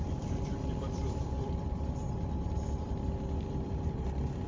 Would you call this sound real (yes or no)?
no